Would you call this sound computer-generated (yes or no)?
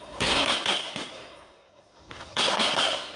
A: yes